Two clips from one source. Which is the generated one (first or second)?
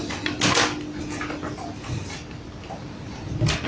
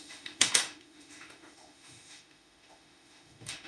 second